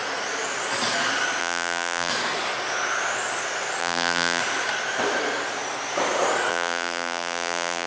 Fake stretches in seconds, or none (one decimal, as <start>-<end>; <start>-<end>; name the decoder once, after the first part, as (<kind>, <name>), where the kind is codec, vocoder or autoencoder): 1.4-2.1 (vocoder, BigVGAN v2); 3.8-4.4; 6.5-7.9